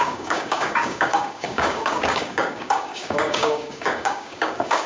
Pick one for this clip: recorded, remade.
remade